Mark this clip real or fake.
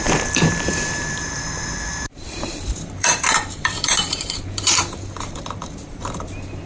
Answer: fake